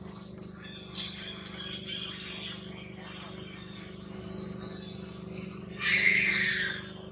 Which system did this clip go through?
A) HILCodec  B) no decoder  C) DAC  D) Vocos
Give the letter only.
B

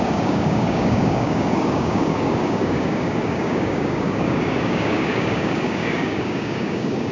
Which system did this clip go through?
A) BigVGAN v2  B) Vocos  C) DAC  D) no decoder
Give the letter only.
C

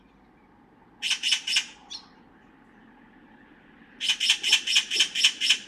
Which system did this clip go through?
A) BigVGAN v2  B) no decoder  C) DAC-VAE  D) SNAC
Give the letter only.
B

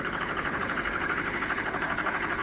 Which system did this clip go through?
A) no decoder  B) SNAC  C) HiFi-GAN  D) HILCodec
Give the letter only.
D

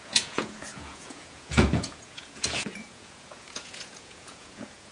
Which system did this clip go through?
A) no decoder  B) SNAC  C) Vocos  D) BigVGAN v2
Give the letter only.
C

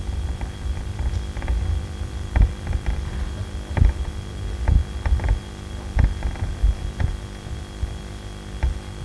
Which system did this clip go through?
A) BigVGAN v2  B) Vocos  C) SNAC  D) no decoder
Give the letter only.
A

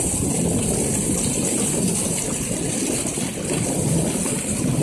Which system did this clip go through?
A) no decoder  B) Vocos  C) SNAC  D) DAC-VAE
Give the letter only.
A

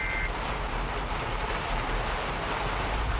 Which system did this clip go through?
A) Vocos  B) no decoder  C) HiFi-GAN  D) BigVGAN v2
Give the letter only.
D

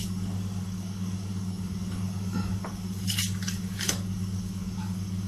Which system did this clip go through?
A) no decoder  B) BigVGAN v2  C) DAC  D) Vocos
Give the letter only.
C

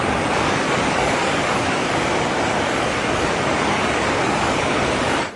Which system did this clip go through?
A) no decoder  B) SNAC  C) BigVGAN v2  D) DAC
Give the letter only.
D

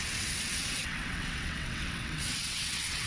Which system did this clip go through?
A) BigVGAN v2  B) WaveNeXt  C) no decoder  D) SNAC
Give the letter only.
B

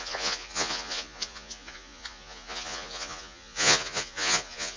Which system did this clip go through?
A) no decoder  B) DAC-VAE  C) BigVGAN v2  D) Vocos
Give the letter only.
D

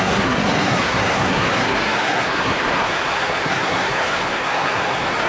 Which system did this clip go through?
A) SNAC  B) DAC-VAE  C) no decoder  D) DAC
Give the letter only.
A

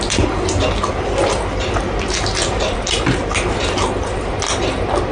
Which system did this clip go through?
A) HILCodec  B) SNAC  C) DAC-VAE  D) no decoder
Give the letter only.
D